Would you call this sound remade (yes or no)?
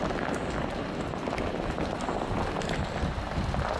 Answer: no